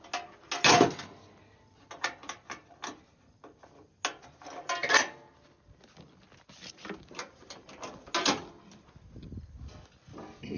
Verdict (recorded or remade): recorded